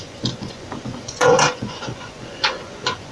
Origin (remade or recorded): remade